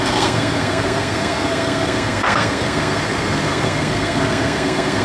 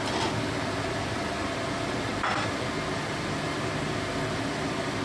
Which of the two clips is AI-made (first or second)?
first